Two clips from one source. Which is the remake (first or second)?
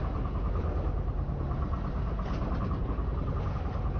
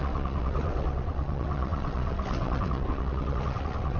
second